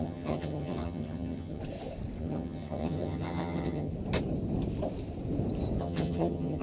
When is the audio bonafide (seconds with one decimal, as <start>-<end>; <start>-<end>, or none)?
1.6-2.2; 3.9-5.8